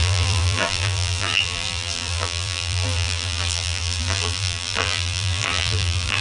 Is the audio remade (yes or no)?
yes